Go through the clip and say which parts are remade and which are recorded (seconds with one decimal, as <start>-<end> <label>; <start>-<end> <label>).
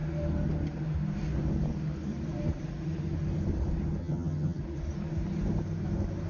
0.0-4.0 recorded; 4.0-4.6 remade; 4.6-6.3 recorded